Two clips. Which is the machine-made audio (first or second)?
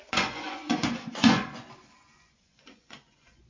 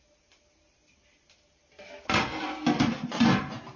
first